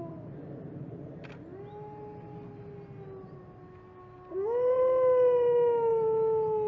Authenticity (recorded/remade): recorded